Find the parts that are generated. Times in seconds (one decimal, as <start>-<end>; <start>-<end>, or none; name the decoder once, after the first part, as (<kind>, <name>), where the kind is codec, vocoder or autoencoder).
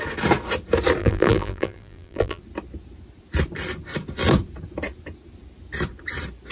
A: 1.0-2.4 (vocoder, BigVGAN v2)